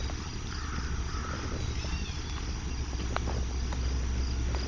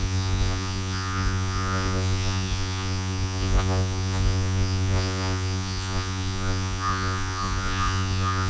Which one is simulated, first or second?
second